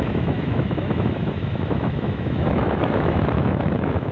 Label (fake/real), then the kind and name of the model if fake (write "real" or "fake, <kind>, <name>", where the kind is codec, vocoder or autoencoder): fake, autoencoder, DAC-VAE